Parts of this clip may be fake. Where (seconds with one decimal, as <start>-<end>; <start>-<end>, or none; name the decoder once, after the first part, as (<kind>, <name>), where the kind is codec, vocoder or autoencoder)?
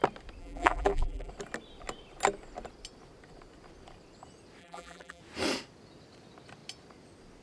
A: 0.4-1.3 (vocoder, BigVGAN v2); 4.6-5.2